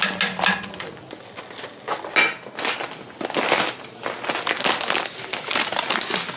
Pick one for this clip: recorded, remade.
recorded